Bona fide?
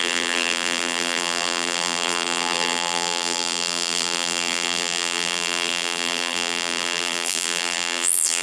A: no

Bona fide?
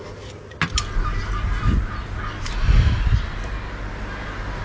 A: yes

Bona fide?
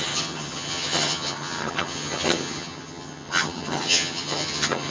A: no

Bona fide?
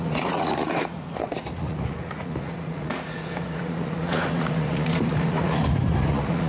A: no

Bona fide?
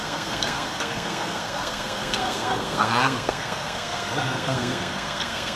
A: no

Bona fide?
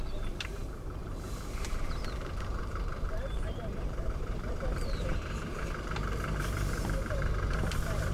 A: no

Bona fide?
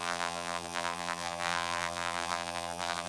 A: no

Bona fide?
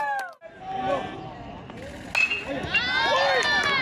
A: yes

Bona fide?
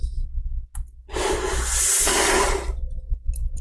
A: yes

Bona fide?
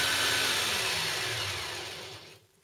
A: yes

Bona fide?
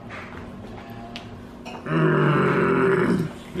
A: yes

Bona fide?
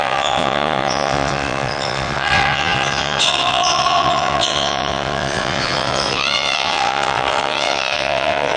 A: no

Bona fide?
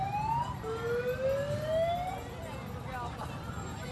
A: yes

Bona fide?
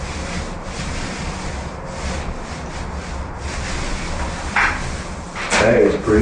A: yes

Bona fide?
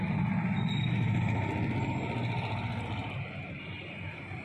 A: yes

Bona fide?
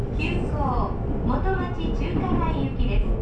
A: yes